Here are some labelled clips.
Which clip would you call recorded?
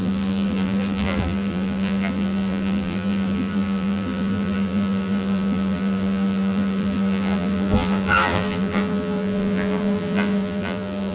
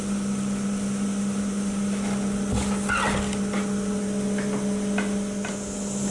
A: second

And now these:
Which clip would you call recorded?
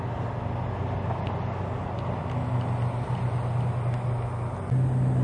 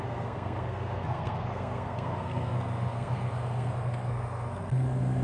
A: first